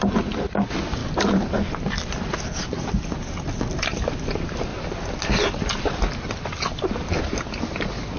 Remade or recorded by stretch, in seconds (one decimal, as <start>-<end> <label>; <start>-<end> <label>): 0.0-8.2 recorded